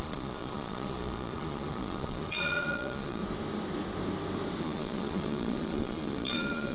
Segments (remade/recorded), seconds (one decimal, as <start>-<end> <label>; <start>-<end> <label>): 0.0-3.2 remade; 3.2-4.6 recorded; 4.6-6.7 remade